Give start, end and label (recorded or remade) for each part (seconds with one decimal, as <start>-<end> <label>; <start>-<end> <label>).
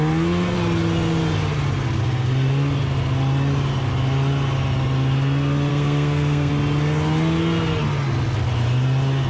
0.0-5.7 recorded; 5.7-6.5 remade; 6.5-9.3 recorded